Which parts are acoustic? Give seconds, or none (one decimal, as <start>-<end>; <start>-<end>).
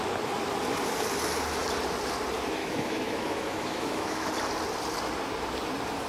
0.0-2.6; 4.3-6.1